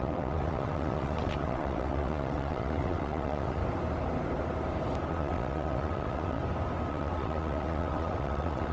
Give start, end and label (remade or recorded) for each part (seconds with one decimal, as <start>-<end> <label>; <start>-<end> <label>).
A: 0.0-3.6 remade; 3.6-5.1 recorded; 5.1-6.4 remade; 6.4-6.9 recorded; 6.9-8.7 remade

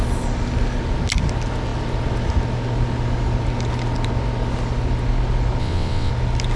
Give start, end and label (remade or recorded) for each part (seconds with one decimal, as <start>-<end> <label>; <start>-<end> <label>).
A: 0.0-5.6 recorded; 5.6-6.1 remade; 6.1-6.6 recorded

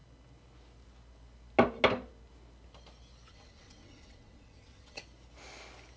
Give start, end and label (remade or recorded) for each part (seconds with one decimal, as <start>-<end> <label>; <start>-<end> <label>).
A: 0.0-3.3 recorded; 3.3-5.0 remade; 5.0-6.0 recorded